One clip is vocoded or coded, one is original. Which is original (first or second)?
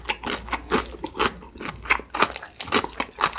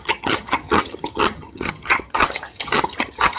first